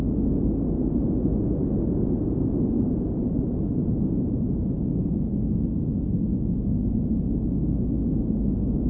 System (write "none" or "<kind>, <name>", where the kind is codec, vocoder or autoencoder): none